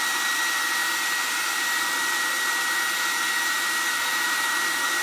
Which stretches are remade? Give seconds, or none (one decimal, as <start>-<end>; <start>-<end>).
none